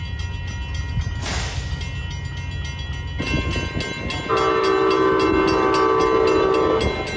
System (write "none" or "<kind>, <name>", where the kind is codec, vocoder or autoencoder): none